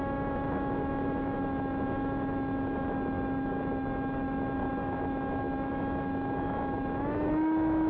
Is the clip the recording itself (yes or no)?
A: no